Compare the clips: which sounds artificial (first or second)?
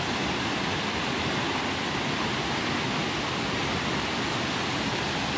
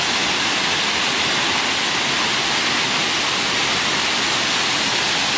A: first